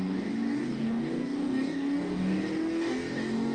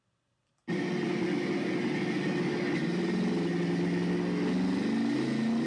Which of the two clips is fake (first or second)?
first